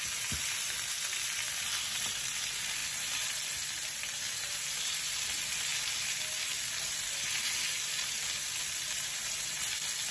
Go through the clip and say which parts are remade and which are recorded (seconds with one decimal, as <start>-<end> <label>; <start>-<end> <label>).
0.0-10.1 recorded